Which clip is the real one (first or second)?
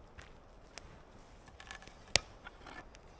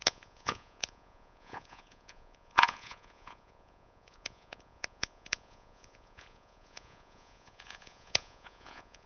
first